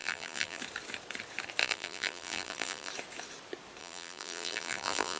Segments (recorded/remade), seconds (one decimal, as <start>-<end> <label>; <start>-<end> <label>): 0.0-0.6 remade; 0.6-1.6 recorded; 1.6-2.9 remade; 2.9-3.8 recorded; 3.8-5.2 remade